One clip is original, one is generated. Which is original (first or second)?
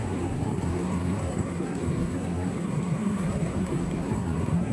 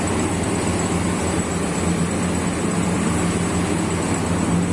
second